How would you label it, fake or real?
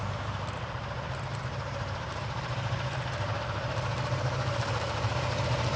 fake